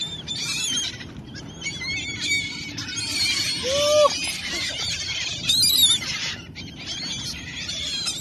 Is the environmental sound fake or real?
real